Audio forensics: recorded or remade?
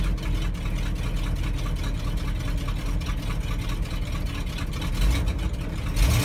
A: recorded